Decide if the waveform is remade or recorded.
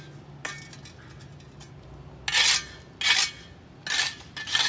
recorded